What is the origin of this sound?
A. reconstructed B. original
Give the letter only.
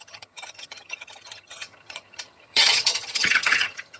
A